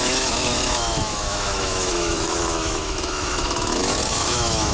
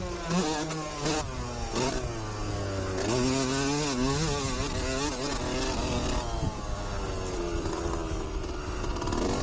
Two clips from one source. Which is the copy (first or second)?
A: first